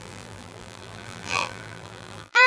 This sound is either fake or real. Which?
fake